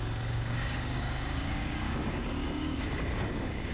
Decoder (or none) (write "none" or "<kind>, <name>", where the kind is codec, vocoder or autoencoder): codec, DAC